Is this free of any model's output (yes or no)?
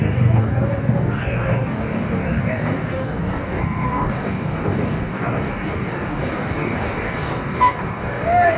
no